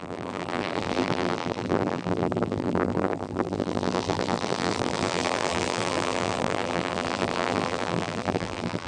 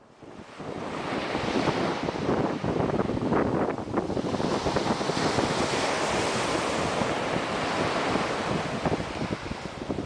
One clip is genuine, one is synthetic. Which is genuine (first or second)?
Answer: second